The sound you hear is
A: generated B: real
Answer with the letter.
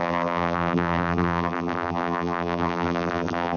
A